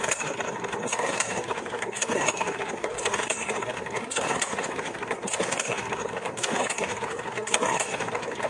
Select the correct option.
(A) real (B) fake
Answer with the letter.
B